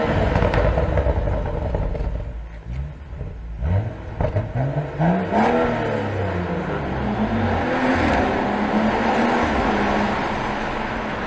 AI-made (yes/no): no